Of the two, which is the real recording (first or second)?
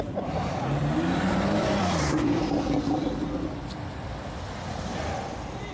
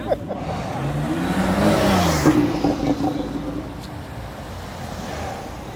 second